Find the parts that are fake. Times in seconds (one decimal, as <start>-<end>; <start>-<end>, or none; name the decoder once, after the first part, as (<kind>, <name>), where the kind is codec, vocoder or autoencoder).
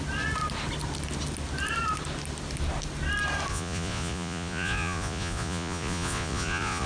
3.5-6.9 (vocoder, Vocos)